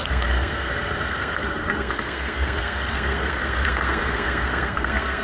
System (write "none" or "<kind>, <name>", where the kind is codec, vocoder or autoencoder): codec, SNAC